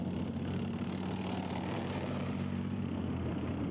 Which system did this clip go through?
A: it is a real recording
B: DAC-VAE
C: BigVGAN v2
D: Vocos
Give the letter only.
C